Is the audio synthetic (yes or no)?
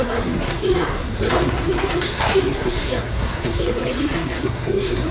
yes